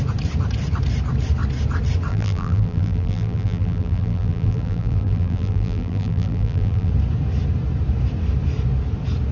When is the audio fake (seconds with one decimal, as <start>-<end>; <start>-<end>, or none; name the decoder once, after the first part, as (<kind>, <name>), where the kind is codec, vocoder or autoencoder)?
2.1-6.9 (vocoder, BigVGAN v2)